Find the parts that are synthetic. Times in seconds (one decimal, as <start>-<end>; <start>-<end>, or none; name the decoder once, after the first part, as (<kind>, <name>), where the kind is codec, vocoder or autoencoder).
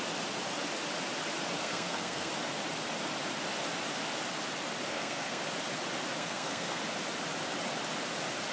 1.6-2.3 (codec, SNAC); 4.9-5.4; 6.2-6.8